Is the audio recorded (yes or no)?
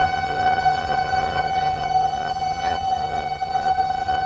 no